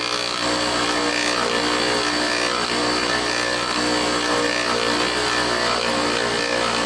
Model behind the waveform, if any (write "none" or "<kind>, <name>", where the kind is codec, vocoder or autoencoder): none